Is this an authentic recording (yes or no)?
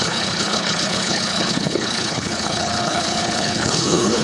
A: no